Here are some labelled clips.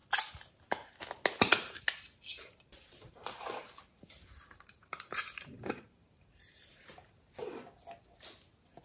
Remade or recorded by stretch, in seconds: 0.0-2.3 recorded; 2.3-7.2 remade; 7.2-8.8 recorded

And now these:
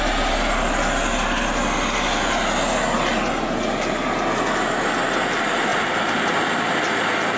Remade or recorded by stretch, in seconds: 0.0-7.4 recorded

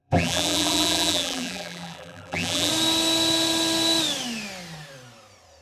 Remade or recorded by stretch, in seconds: 0.0-2.7 remade; 2.7-5.6 recorded

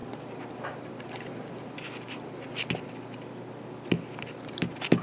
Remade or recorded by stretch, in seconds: 0.0-5.0 recorded

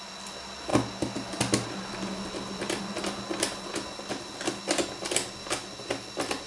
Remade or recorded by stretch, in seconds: 0.0-6.5 recorded

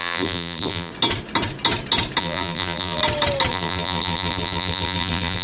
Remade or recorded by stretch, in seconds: 0.0-0.9 remade; 0.9-2.2 recorded; 2.2-3.0 remade; 3.0-3.5 recorded; 3.5-5.4 remade

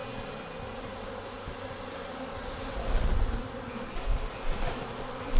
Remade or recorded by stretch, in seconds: 0.0-5.4 recorded

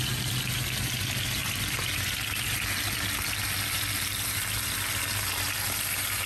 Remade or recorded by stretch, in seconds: 0.0-6.3 recorded